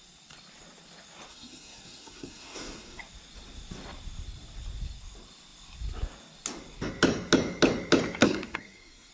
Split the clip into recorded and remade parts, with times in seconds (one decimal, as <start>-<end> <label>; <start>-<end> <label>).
0.0-1.3 recorded; 1.3-3.0 remade; 3.0-8.2 recorded; 8.2-9.1 remade